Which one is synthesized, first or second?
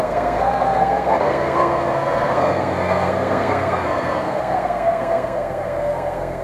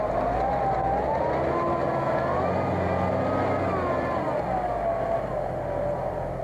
first